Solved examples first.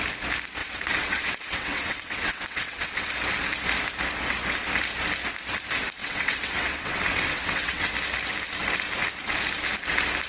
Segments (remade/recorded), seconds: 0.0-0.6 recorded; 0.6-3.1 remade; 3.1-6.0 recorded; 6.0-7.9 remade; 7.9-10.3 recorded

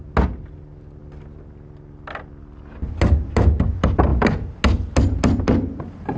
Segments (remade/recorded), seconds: 0.0-6.2 recorded

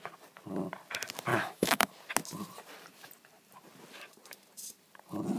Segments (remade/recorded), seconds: 0.0-1.3 recorded; 1.3-1.9 remade; 1.9-5.4 recorded